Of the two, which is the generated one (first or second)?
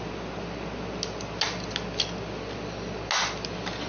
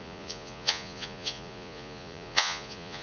second